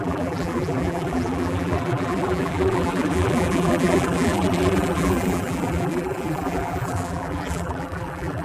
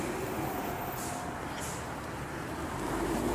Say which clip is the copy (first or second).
first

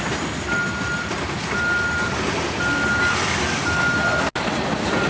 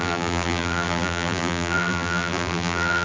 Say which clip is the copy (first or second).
second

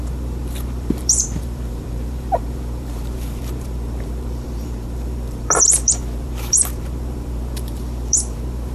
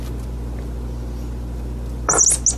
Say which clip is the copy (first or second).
first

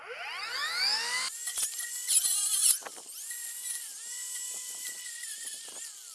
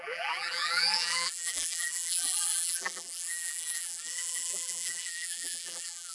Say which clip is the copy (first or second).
second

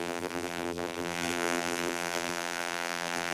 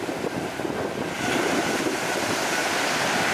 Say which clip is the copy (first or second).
first